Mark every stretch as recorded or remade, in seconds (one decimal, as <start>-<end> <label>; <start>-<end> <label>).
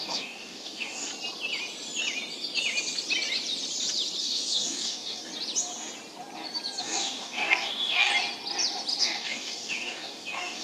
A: 0.0-1.1 remade; 1.1-4.2 recorded; 4.2-5.3 remade; 5.3-6.8 recorded; 6.8-8.1 remade; 8.1-9.0 recorded; 9.0-10.6 remade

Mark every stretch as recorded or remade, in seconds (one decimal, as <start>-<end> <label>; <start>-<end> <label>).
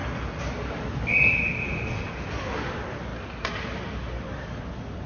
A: 0.0-5.1 recorded